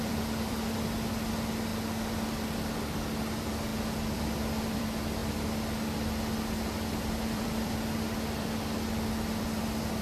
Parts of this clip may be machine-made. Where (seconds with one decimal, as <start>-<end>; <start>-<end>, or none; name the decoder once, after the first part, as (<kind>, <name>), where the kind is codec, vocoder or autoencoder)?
0.0-1.7 (vocoder, BigVGAN v2); 2.8-10.0